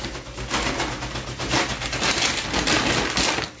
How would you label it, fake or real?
real